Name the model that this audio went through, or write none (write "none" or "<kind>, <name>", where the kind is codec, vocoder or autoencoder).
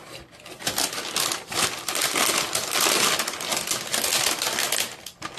none